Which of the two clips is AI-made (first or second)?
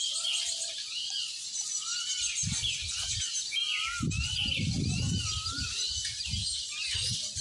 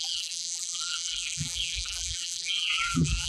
second